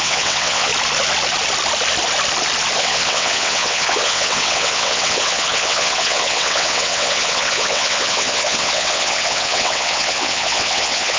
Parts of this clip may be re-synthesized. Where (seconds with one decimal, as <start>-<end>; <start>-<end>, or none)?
0.0-0.7; 2.8-11.2